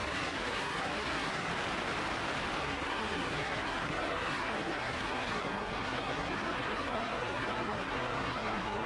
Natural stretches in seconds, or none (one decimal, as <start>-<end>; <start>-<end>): 1.5-2.6